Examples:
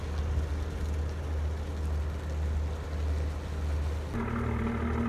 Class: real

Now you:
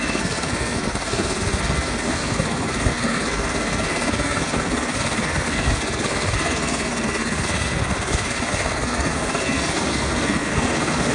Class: fake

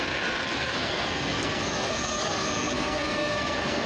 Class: fake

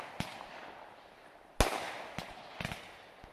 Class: real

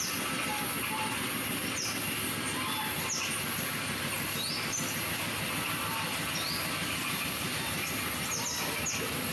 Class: real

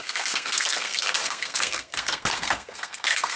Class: fake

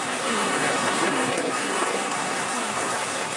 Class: fake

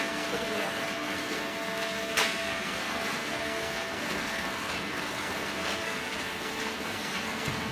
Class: fake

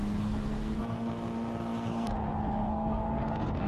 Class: fake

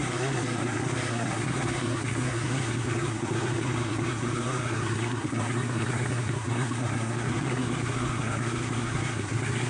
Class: fake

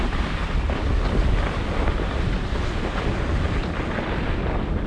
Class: real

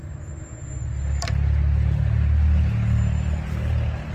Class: real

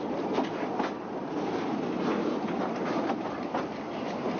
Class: real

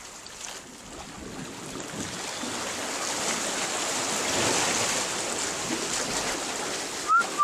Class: real